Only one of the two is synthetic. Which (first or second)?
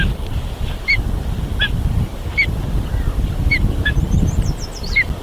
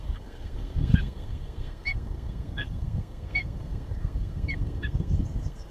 second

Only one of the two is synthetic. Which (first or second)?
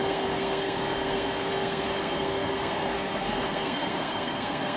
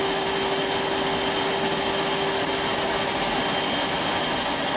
first